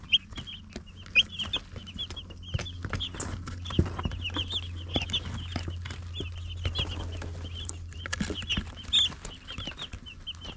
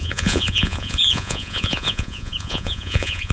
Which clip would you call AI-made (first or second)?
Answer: second